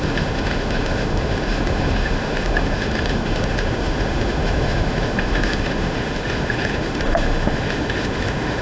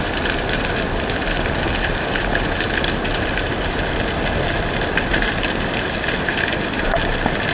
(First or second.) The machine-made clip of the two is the first